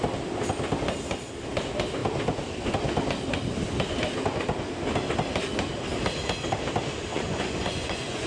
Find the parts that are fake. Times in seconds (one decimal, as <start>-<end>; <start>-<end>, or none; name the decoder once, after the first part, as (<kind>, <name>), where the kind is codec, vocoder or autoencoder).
7.1-8.3 (vocoder, Vocos)